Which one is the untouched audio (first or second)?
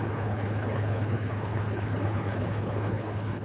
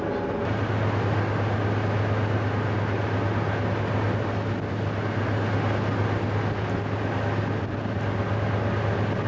second